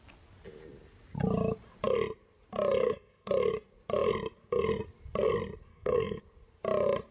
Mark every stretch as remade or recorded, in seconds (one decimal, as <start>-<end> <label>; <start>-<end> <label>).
0.0-2.8 recorded; 2.8-3.3 remade; 3.3-5.7 recorded; 5.7-6.2 remade; 6.2-7.1 recorded